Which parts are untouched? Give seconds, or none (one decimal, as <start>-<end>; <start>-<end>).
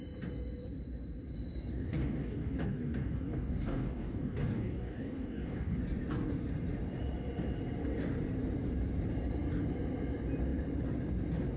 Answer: 0.0-1.7; 5.8-11.6